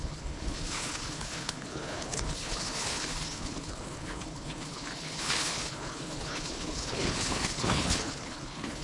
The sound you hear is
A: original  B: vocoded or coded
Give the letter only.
B